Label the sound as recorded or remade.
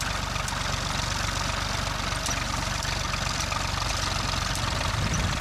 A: recorded